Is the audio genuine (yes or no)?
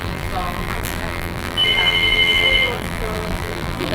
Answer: no